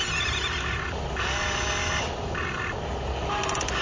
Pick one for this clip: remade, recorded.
recorded